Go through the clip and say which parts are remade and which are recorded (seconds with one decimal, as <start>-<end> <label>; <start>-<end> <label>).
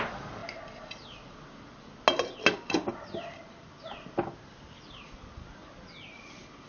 0.0-6.7 recorded